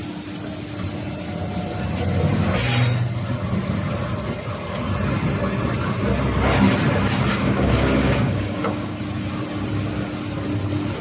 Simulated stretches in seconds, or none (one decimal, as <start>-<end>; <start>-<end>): 7.3-9.0